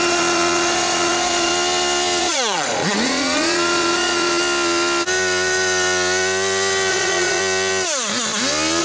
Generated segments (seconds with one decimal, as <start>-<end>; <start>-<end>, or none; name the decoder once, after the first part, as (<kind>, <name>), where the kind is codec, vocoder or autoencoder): 0.0-1.5 (vocoder, Vocos); 2.2-4.3; 6.9-7.4